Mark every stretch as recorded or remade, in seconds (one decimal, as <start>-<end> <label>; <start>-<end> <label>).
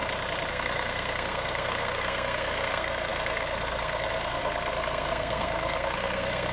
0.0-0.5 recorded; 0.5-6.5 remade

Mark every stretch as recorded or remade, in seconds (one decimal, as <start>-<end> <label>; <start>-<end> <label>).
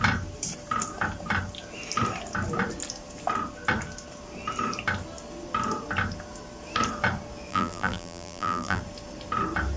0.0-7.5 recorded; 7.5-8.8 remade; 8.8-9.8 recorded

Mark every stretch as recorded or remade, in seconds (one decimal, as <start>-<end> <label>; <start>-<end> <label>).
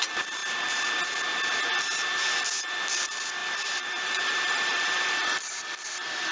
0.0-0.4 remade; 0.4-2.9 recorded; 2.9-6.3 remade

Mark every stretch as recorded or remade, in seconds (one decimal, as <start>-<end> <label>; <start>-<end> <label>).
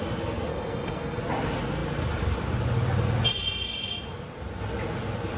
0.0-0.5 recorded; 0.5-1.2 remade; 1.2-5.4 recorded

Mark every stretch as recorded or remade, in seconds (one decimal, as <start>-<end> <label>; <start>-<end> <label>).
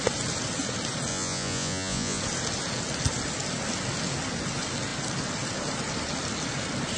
0.0-1.1 recorded; 1.1-2.2 remade; 2.2-7.0 recorded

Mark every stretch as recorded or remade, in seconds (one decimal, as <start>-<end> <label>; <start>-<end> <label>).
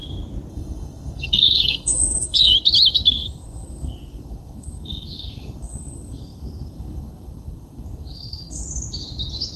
0.0-0.5 recorded; 0.5-2.5 remade; 2.5-3.1 recorded; 3.1-8.6 remade; 8.6-9.6 recorded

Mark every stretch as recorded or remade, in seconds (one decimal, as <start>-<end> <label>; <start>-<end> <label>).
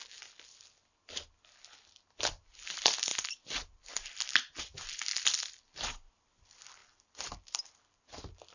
0.0-2.4 recorded; 2.4-8.5 remade